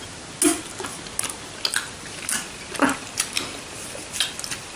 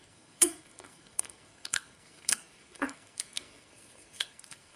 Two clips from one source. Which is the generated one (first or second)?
second